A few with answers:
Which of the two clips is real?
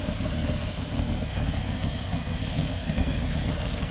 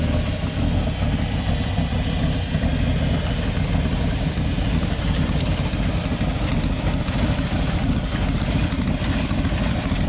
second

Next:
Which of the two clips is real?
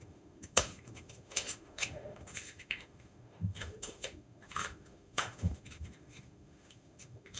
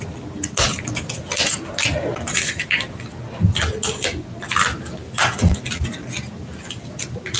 second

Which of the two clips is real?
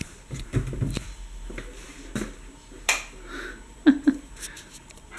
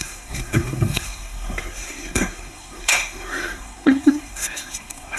first